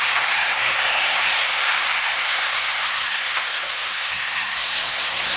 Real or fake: fake